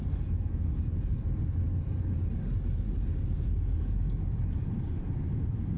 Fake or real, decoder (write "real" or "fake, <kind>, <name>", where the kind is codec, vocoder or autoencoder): real